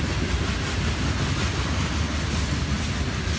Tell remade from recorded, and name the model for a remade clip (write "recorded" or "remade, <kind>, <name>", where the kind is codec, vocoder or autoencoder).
recorded